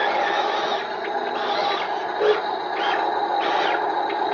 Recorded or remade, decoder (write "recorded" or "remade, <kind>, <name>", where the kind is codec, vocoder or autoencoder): recorded